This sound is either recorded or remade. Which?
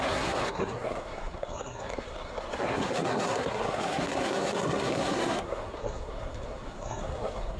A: remade